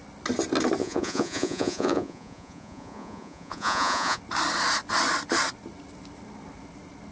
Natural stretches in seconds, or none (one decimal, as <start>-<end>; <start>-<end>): 0.0-0.8; 4.2-7.1